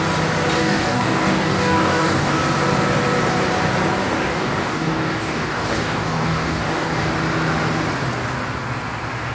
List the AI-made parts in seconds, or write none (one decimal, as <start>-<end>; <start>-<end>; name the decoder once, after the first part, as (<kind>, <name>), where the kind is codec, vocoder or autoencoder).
0.6-2.4 (codec, DAC); 4.0-7.1